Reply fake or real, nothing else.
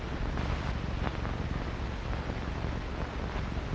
real